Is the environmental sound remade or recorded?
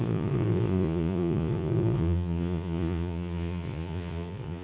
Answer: remade